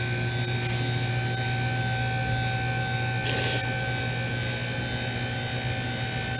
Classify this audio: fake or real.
real